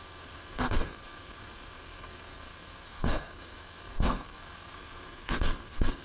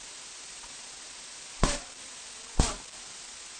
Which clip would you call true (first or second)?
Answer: second